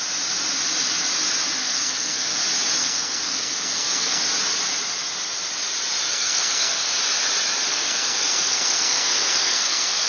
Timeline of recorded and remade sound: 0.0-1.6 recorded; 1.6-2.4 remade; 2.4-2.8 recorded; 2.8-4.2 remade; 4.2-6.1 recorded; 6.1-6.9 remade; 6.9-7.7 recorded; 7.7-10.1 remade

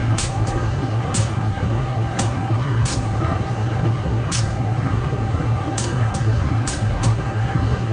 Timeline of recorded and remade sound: 0.0-7.9 remade

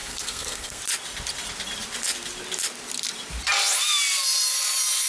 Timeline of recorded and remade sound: 0.0-0.8 remade; 0.8-5.1 recorded

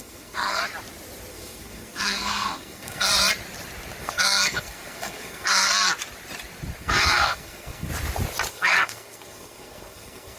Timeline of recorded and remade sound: 0.0-0.6 remade; 0.6-1.3 recorded; 1.3-3.1 remade; 3.1-4.0 recorded; 4.0-5.7 remade; 5.7-6.8 recorded; 6.8-7.9 remade; 7.9-8.5 recorded; 8.5-10.4 remade

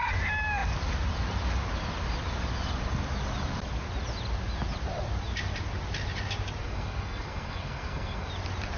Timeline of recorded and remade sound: 0.0-6.6 recorded; 6.6-8.3 remade; 8.3-8.8 recorded

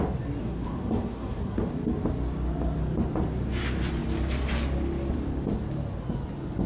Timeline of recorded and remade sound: 0.0-0.4 recorded; 0.4-1.7 remade; 1.7-6.7 recorded